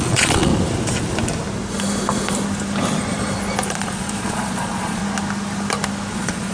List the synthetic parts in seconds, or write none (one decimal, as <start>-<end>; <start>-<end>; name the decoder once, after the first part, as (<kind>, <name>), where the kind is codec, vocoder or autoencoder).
0.0-0.5 (vocoder, Vocos); 3.7-5.0; 6.1-6.5